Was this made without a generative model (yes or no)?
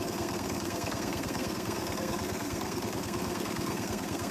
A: no